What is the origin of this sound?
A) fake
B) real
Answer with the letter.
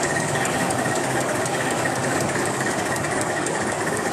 A